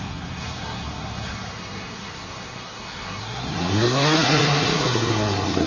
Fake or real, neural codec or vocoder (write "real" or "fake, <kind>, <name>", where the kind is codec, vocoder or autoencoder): fake, codec, SNAC